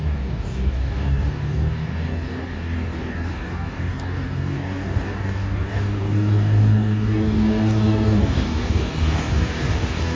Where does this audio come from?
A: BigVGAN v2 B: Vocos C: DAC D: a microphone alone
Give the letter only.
C